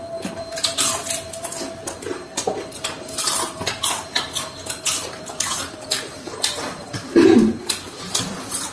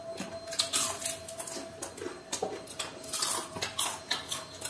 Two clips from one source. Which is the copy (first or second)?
first